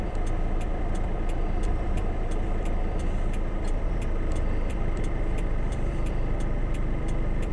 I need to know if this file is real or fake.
fake